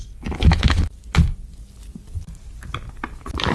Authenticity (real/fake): real